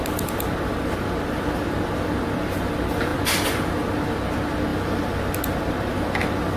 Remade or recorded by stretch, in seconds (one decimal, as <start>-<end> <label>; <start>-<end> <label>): 0.0-4.7 recorded; 4.7-5.4 remade; 5.4-6.6 recorded